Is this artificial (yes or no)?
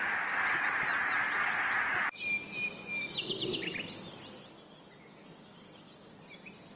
no